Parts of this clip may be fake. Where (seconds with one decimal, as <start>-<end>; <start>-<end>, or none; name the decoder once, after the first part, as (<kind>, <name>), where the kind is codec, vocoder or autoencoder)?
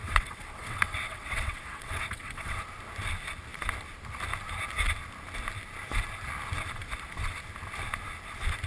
0.0-2.6 (vocoder, WaveNeXt)